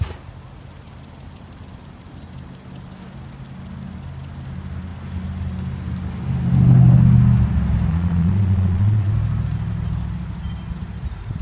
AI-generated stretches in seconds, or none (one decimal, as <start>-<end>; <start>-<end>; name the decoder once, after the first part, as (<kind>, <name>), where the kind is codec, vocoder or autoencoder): 7.9-9.1 (vocoder, Vocos)